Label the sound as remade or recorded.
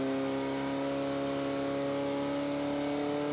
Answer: recorded